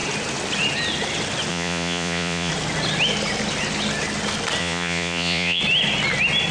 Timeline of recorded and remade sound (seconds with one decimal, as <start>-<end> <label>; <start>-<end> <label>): 0.0-1.5 recorded; 1.5-2.5 remade; 2.5-4.6 recorded; 4.6-5.6 remade; 5.6-6.5 recorded

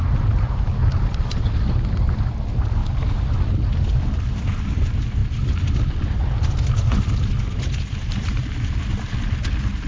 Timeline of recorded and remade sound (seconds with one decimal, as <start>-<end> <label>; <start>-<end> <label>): 0.0-9.9 recorded

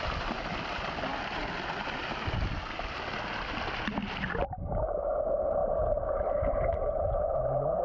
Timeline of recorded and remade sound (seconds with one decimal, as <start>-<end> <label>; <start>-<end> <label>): 0.0-7.8 recorded

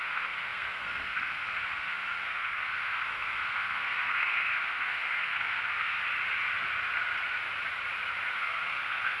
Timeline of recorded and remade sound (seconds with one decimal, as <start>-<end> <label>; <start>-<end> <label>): 0.0-6.0 remade; 6.0-8.3 recorded; 8.3-9.2 remade

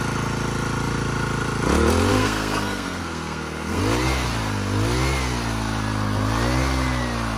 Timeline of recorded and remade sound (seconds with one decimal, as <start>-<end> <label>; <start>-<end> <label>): 0.0-2.1 recorded; 2.1-3.8 remade; 3.8-7.4 recorded

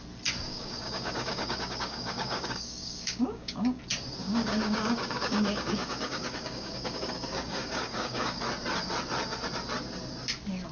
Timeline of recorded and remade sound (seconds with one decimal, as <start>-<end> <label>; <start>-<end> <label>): 0.0-0.5 recorded; 0.5-3.8 remade; 3.8-4.2 recorded; 4.2-8.4 remade; 8.4-10.7 recorded

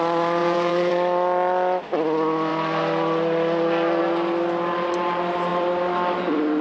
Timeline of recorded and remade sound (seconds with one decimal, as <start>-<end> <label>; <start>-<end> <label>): 0.0-0.4 recorded; 0.4-0.9 remade; 0.9-6.6 recorded

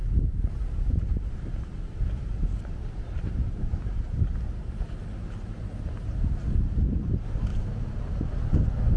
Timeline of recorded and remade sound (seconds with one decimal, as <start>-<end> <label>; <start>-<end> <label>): 0.0-5.0 remade; 5.0-7.5 recorded; 7.5-8.5 remade; 8.5-9.0 recorded